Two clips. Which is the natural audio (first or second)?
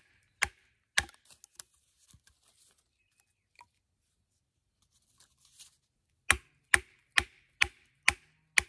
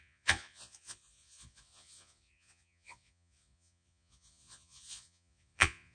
first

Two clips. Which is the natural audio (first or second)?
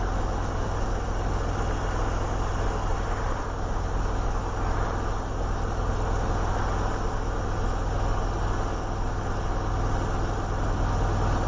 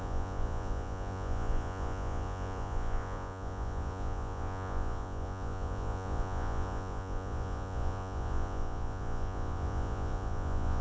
first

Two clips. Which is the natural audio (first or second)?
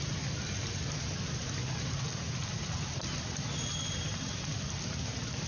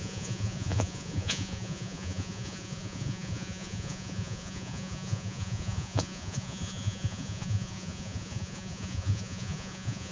first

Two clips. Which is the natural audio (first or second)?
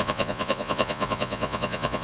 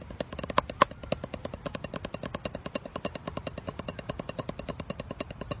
second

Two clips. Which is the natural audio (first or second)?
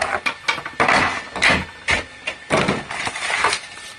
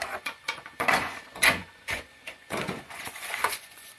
first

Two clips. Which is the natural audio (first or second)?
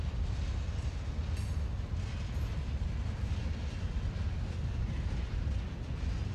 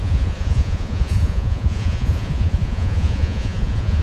first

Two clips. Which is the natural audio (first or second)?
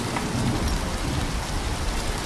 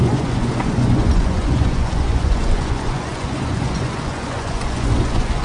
first